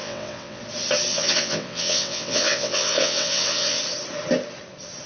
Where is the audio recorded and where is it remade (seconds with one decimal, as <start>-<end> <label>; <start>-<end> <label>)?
0.0-0.6 remade; 0.6-1.1 recorded; 1.1-3.8 remade; 3.8-5.1 recorded